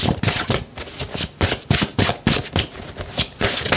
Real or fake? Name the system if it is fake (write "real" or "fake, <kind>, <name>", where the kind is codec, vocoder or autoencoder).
real